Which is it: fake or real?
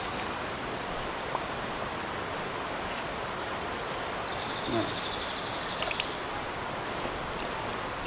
real